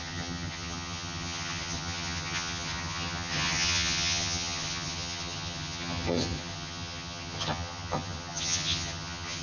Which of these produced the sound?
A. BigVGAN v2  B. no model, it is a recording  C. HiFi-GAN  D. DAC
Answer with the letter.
C